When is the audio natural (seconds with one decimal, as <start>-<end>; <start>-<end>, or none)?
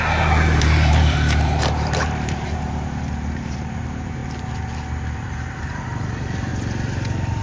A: 4.2-5.2; 6.5-7.4